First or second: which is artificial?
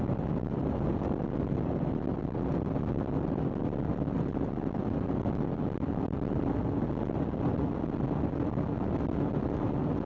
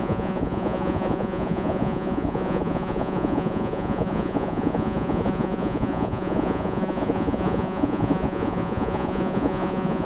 second